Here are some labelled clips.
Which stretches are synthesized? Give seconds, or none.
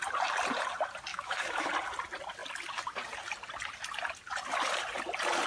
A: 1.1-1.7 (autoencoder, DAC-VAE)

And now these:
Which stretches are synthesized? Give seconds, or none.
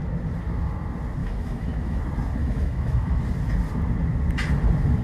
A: 1.2-2.0 (autoencoder, DAC-VAE); 2.4-3.2